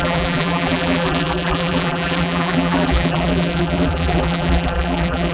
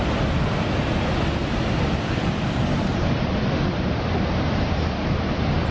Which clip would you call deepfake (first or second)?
first